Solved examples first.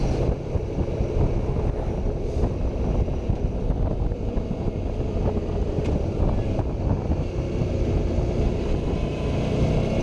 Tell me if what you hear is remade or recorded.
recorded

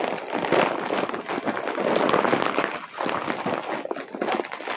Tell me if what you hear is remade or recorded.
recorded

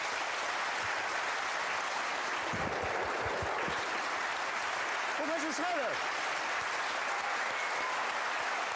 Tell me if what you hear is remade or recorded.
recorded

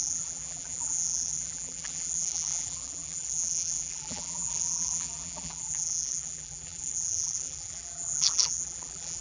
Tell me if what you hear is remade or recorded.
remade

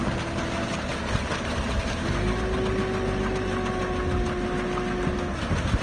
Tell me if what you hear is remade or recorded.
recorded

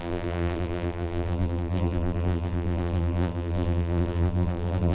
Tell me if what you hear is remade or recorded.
remade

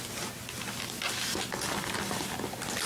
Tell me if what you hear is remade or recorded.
recorded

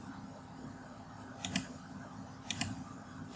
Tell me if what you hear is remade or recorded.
remade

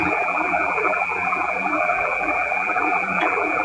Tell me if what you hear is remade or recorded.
remade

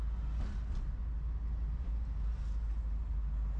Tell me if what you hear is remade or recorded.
recorded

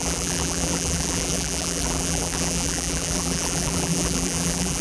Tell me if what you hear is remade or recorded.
remade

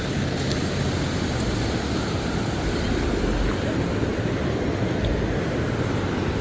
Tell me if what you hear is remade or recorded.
remade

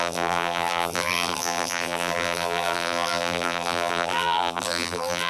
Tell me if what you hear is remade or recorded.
remade